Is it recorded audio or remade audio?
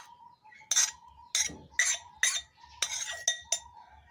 recorded